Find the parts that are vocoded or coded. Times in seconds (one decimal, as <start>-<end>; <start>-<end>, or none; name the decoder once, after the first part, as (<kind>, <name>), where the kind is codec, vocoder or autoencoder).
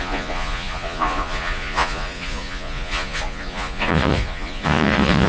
0.0-5.3 (vocoder, Vocos)